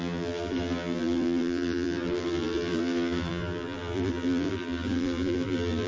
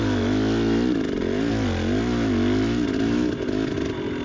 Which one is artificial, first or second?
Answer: first